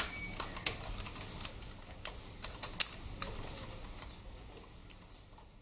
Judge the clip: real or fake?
real